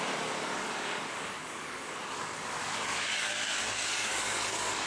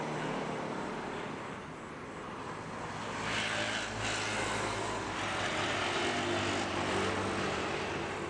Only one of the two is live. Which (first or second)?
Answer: second